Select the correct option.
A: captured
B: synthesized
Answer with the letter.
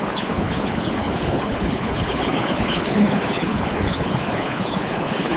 B